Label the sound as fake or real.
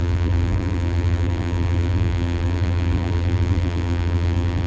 fake